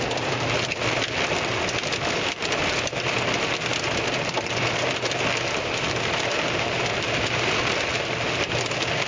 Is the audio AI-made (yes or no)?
yes